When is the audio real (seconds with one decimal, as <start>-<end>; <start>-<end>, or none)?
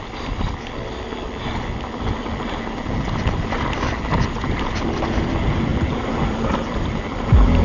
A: 0.0-7.6